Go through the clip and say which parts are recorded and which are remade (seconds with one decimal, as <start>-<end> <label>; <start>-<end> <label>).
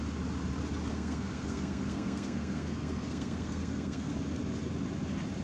0.0-0.9 recorded; 0.9-4.1 remade; 4.1-5.4 recorded